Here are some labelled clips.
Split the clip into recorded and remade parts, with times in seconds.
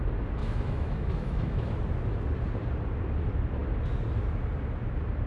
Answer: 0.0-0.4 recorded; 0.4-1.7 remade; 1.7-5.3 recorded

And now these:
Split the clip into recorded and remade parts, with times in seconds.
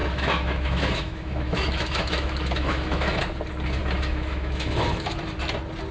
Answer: 0.0-3.2 remade; 3.2-3.8 recorded; 3.8-5.2 remade; 5.2-5.9 recorded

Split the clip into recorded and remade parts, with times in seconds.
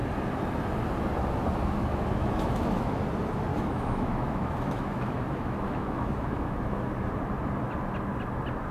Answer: 0.0-1.8 recorded; 1.8-3.0 remade; 3.0-3.5 recorded; 3.5-7.1 remade; 7.1-8.7 recorded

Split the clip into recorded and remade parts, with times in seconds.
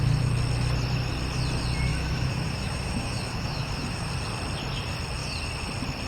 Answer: 0.0-1.9 recorded; 1.9-4.1 remade; 4.1-6.1 recorded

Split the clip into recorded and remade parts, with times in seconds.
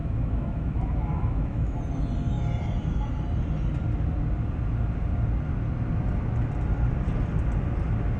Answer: 0.0-1.8 remade; 1.8-8.2 recorded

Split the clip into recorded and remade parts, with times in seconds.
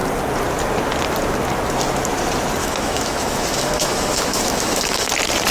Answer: 0.0-2.6 recorded; 2.6-5.1 remade; 5.1-5.5 recorded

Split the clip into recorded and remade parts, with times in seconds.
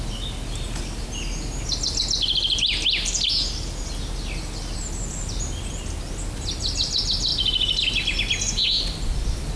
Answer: 0.0-9.6 recorded